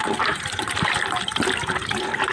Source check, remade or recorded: remade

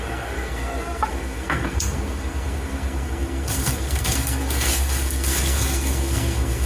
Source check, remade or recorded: remade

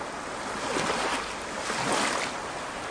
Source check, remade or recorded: recorded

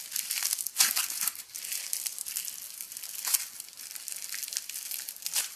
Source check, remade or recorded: recorded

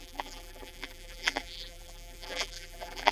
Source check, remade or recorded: remade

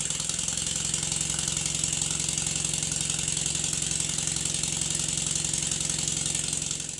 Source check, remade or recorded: recorded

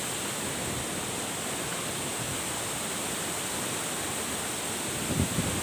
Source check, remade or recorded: recorded